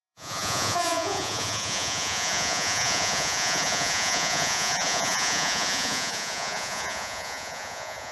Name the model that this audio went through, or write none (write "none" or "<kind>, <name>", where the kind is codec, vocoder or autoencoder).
vocoder, Vocos